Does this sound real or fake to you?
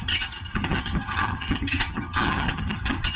fake